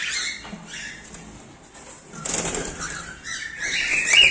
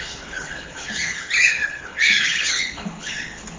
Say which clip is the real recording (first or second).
first